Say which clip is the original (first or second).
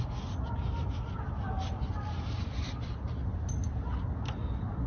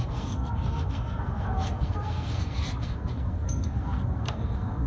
first